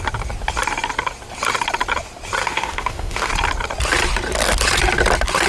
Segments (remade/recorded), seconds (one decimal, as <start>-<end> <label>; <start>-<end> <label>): 0.0-2.4 recorded; 2.4-3.3 remade; 3.3-5.5 recorded